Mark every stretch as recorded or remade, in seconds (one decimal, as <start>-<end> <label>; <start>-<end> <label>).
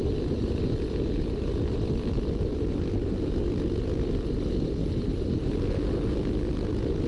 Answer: 0.0-7.1 recorded